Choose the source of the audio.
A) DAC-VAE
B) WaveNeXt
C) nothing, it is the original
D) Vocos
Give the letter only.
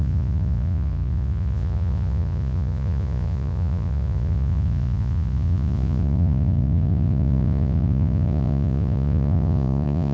D